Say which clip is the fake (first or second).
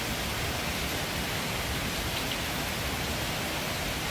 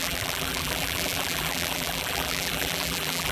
second